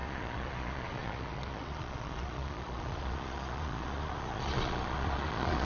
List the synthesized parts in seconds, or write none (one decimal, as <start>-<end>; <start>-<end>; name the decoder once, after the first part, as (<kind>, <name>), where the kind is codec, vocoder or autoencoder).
0.0-5.6 (vocoder, Vocos)